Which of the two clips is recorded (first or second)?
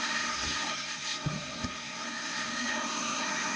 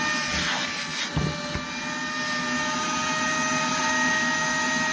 second